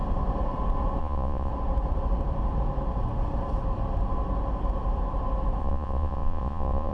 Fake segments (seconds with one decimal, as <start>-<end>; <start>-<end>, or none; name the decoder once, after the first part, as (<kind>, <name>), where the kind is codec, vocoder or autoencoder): 1.0-1.5 (vocoder, Vocos); 5.6-6.9